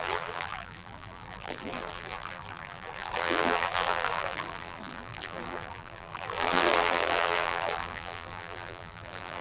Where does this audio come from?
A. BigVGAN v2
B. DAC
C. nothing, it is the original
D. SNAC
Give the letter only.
A